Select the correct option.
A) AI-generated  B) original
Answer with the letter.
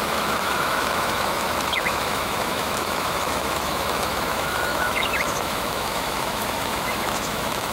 A